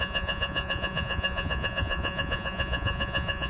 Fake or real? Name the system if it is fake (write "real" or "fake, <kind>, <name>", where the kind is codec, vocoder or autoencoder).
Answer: fake, vocoder, Vocos